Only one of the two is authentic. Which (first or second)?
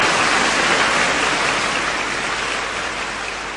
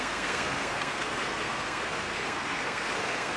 first